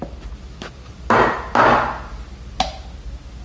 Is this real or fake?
real